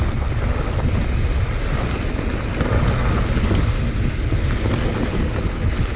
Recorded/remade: recorded